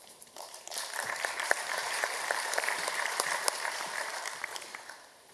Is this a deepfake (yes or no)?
yes